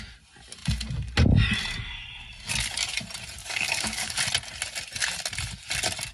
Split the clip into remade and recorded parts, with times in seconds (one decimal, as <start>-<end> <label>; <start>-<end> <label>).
0.0-3.4 recorded; 3.4-4.2 remade; 4.2-6.1 recorded